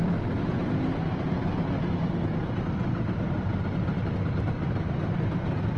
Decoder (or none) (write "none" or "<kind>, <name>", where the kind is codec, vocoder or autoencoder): none